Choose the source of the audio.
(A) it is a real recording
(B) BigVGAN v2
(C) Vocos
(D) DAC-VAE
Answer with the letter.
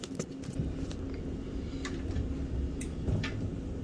A